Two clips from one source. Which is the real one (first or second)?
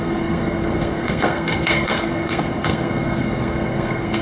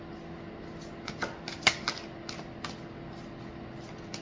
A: second